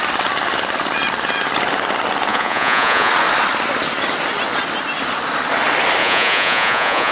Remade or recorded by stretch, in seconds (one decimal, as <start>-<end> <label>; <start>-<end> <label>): 0.0-2.3 recorded; 2.3-3.1 remade; 3.1-6.0 recorded; 6.0-7.1 remade